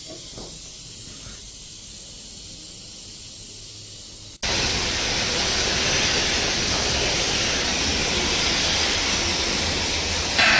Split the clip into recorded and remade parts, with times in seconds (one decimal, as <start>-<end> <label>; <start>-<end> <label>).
0.0-10.6 recorded